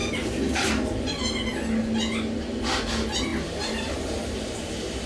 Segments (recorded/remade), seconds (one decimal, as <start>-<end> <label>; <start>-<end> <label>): 0.0-0.7 remade; 0.7-3.3 recorded; 3.3-5.1 remade